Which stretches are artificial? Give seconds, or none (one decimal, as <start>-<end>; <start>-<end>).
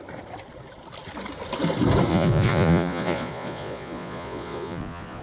2.1-5.2